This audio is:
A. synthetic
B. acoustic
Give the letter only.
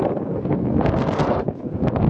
A